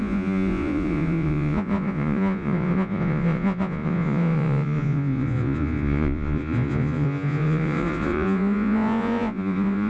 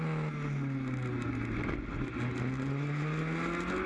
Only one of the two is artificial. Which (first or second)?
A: first